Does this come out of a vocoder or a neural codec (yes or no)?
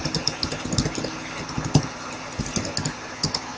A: no